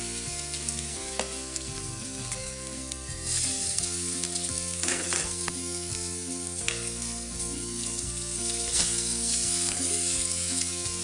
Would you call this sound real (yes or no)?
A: no